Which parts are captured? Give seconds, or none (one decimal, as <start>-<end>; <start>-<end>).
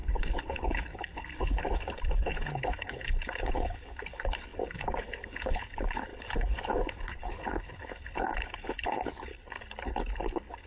9.3-10.1